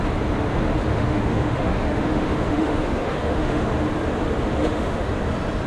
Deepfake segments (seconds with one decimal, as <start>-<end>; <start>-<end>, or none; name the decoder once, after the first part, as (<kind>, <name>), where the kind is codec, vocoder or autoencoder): 0.9-3.7 (autoencoder, DAC-VAE); 4.6-5.1